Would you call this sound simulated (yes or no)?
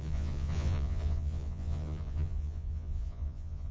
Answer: yes